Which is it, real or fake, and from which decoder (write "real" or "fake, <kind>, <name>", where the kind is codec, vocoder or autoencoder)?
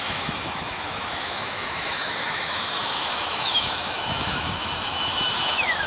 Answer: fake, autoencoder, DAC-VAE